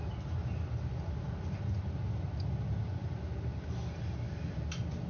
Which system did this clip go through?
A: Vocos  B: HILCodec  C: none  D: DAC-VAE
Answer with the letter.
C